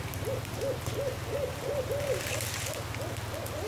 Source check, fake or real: real